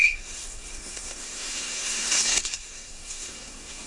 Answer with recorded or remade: remade